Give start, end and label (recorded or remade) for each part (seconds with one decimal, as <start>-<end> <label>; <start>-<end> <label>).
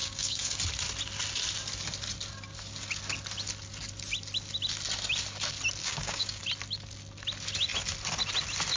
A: 0.0-0.6 remade; 0.6-5.8 recorded; 5.8-6.4 remade; 6.4-8.8 recorded